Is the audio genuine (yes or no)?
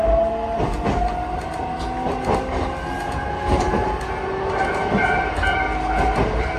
yes